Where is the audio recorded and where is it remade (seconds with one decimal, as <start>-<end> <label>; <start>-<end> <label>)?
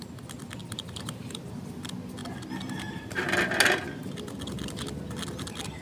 0.0-0.6 recorded; 0.6-1.5 remade; 1.5-5.8 recorded